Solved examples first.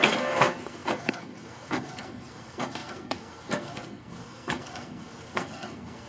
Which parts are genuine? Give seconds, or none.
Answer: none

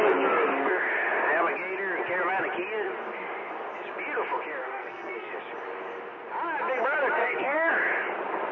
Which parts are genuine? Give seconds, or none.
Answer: 0.0-4.6; 5.3-7.2; 7.7-8.5

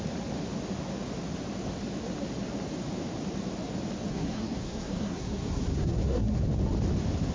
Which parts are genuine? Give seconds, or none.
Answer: 0.0-4.1; 6.4-7.3